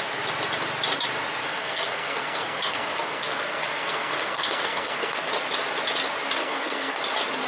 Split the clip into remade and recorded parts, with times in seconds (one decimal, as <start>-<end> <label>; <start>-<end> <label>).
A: 0.0-1.4 recorded; 1.4-5.3 remade; 5.3-6.4 recorded; 6.4-7.0 remade; 7.0-7.5 recorded